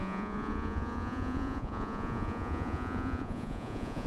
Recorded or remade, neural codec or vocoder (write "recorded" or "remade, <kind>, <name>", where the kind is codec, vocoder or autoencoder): remade, vocoder, Vocos